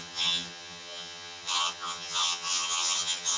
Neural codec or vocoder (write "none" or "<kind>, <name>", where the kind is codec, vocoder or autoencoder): vocoder, HiFi-GAN